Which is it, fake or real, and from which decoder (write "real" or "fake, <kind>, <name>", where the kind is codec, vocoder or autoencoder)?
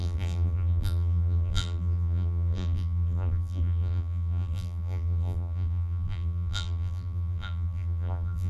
fake, vocoder, BigVGAN v2